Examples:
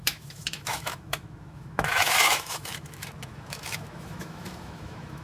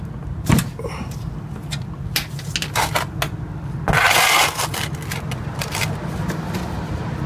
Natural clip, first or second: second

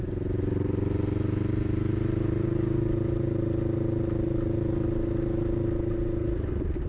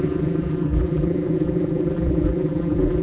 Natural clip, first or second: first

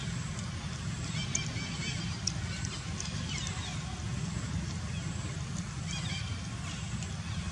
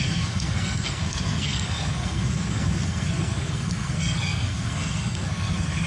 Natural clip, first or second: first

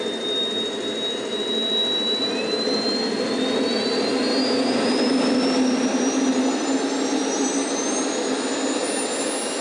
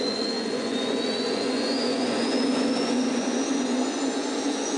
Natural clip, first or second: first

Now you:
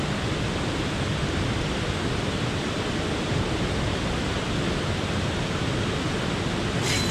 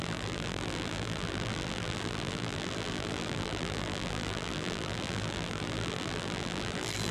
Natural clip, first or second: first